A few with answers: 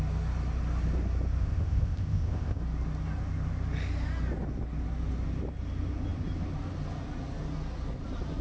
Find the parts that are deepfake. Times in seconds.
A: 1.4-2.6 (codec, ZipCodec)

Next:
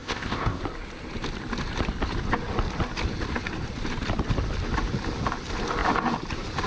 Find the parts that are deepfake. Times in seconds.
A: 0.0-0.6 (codec, ZipCodec)

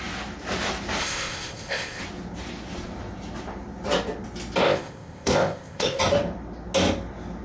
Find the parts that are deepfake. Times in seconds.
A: 1.0-2.0 (codec, ZipCodec); 4.6-6.0